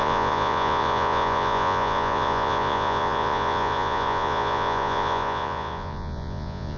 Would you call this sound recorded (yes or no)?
no